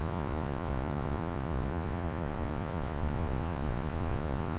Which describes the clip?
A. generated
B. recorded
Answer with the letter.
A